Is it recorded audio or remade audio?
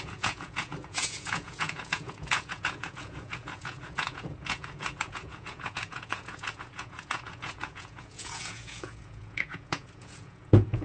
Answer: remade